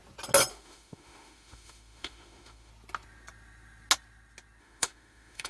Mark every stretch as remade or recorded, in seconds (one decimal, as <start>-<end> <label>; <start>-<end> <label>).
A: 0.0-0.5 recorded; 0.5-2.7 remade; 2.7-4.6 recorded; 4.6-5.5 remade